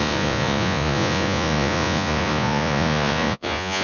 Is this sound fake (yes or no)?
yes